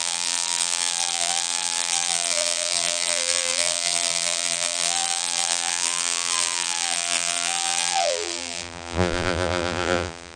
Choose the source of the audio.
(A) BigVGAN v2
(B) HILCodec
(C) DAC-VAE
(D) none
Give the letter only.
A